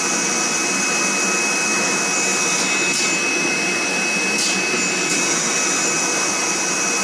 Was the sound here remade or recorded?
recorded